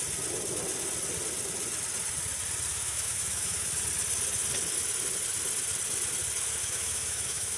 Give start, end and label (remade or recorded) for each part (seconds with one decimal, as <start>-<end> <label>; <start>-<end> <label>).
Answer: 0.0-2.7 recorded; 2.7-3.7 remade; 3.7-6.6 recorded; 6.6-7.6 remade